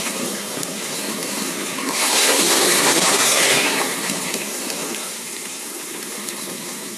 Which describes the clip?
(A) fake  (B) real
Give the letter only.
A